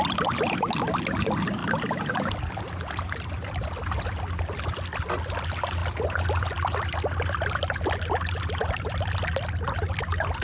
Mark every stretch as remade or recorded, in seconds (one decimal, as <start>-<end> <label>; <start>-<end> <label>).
0.0-10.4 recorded